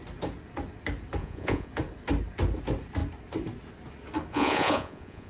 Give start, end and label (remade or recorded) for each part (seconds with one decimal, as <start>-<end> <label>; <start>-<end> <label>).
0.0-1.2 recorded; 1.2-1.7 remade; 1.7-4.3 recorded; 4.3-5.3 remade